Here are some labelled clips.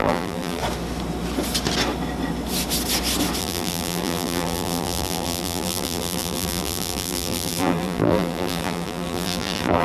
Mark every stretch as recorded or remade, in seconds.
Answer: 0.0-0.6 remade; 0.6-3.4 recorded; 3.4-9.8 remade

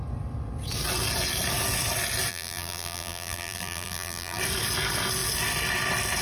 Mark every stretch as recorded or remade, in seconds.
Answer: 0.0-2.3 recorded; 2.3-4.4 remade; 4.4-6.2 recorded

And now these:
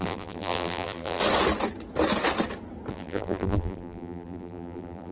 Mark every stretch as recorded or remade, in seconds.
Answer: 0.0-1.2 remade; 1.2-2.9 recorded; 2.9-5.1 remade